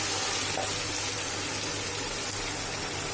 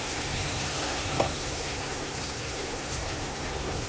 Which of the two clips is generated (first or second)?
second